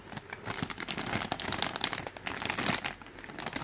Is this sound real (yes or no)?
yes